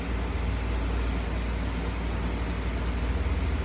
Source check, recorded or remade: recorded